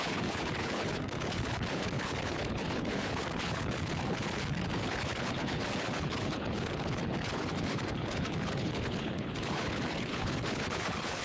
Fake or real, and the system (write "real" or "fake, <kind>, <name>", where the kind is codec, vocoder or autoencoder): fake, codec, HILCodec